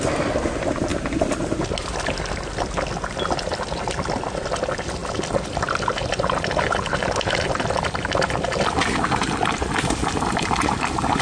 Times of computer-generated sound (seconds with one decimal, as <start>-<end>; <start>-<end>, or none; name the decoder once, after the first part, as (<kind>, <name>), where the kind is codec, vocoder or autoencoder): none

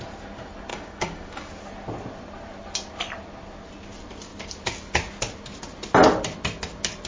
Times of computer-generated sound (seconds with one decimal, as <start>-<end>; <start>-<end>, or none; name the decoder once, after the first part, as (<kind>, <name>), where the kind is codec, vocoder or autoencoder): 0.7-1.5 (codec, DAC)

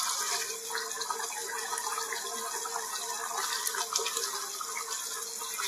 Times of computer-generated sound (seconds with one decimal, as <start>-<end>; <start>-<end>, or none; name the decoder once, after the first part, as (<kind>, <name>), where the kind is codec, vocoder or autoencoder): none

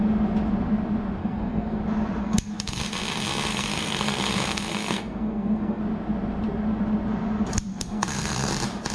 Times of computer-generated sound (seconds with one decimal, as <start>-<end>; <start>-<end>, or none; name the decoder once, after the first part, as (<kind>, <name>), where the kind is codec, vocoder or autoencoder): 1.2-1.8 (codec, SNAC); 2.2-2.8; 3.5-5.8; 7.7-8.5

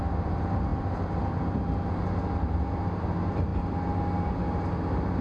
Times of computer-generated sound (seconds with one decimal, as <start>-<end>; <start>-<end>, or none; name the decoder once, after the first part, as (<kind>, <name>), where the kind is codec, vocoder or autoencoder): none

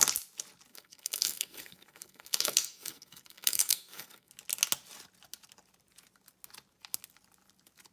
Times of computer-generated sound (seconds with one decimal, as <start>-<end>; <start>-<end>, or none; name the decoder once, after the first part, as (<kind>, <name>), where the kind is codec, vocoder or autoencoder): 0.7-4.3 (codec, SNAC)

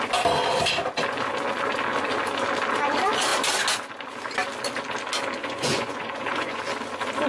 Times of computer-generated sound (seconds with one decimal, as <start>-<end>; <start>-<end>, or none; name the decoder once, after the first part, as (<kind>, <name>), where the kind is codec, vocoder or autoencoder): 5.4-6.6 (vocoder, Vocos)

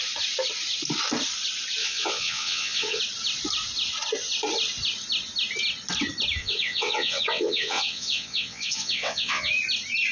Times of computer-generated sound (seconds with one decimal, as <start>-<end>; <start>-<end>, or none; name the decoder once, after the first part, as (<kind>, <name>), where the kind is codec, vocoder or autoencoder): 1.8-3.0 (vocoder, WaveNeXt); 6.4-9.5